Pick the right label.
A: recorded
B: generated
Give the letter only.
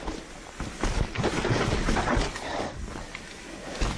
A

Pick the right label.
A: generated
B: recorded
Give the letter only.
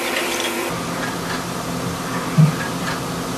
B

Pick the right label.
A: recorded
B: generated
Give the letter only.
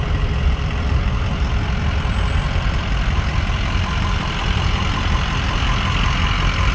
A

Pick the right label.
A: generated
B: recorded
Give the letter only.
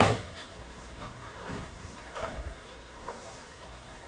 A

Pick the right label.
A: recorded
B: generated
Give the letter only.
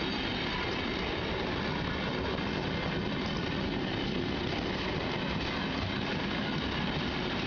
A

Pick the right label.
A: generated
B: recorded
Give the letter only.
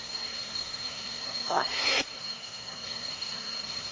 A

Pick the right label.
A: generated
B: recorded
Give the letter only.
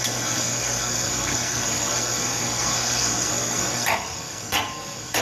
A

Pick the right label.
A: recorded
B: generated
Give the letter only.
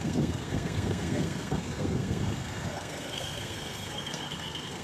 B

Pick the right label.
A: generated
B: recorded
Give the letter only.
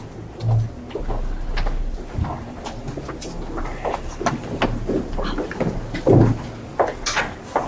B